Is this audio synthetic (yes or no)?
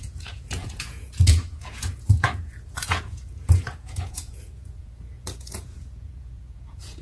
yes